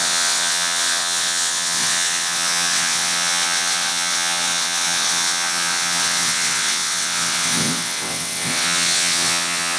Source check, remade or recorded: remade